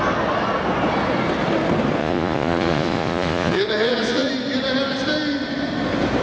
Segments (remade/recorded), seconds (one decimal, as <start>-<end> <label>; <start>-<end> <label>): 0.0-2.0 recorded; 2.0-4.3 remade; 4.3-6.2 recorded